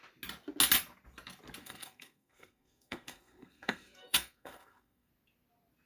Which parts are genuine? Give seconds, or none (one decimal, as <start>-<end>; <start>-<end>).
0.0-1.6; 5.1-5.9